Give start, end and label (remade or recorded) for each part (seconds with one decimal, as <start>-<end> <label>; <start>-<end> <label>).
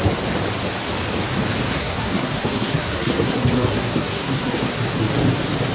0.0-1.7 recorded; 1.7-5.1 remade; 5.1-5.7 recorded